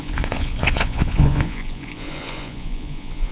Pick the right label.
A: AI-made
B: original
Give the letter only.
A